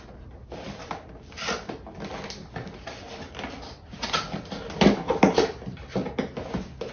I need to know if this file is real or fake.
real